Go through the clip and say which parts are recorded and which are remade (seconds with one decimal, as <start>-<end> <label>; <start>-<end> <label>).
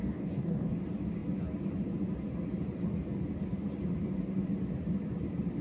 0.0-0.7 remade; 0.7-5.6 recorded